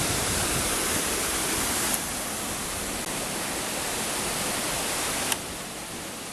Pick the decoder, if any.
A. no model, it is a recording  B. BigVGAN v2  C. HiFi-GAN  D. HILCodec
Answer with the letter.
A